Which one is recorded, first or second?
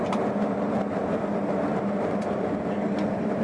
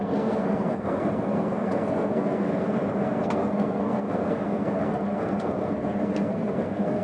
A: first